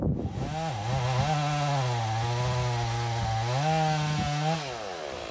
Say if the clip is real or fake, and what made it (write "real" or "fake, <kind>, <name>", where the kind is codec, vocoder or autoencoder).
real